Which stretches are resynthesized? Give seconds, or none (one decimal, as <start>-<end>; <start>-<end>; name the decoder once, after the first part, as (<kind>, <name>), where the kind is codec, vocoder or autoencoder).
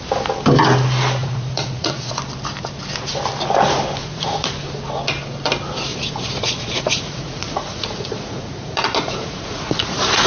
1.2-2.1 (vocoder, Vocos); 4.0-4.5; 5.9-10.3